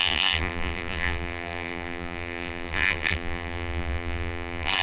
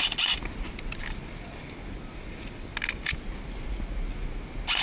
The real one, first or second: second